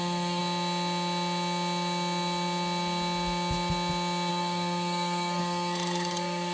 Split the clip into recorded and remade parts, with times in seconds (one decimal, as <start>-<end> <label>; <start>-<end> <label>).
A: 0.0-0.4 remade; 0.4-4.3 recorded; 4.3-6.5 remade